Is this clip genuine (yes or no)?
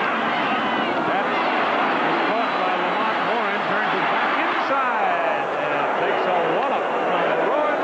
yes